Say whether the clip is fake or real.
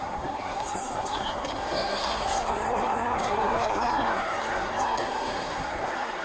fake